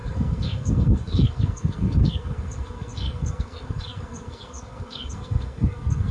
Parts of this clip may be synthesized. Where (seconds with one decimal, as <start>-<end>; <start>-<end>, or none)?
0.0-6.1